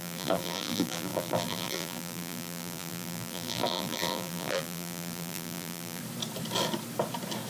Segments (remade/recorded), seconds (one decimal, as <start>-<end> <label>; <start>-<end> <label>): 0.0-6.0 remade; 6.0-7.5 recorded